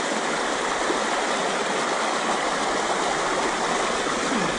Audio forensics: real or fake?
real